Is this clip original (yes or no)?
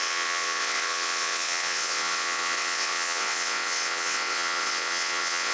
no